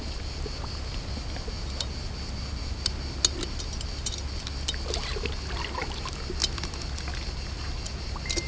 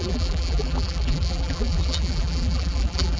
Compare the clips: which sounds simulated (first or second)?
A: second